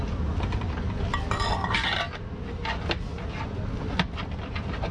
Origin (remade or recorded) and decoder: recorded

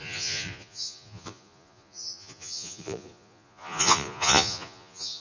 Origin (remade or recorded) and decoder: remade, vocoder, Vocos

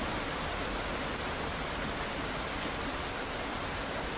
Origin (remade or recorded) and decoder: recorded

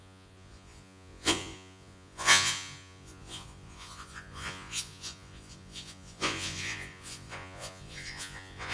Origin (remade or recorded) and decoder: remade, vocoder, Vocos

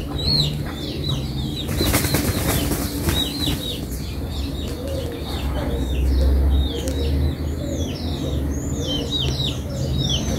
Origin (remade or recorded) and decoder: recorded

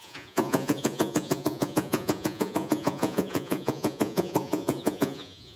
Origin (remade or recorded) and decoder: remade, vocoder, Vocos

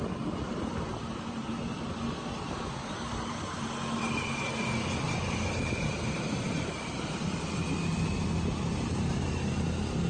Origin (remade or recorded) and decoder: recorded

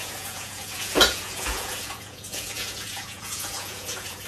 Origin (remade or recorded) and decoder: remade, vocoder, Vocos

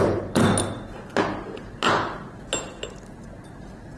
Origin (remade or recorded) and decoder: recorded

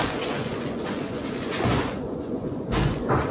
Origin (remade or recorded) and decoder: remade, vocoder, Vocos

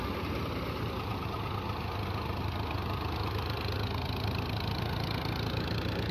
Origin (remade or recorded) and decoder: recorded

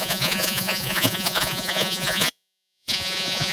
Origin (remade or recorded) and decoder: remade, vocoder, Vocos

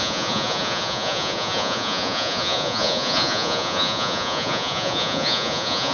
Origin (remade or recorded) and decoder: remade, vocoder, Vocos